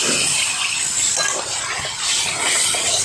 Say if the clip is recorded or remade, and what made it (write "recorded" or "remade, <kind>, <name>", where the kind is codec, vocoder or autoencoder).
recorded